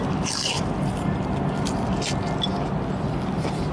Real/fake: real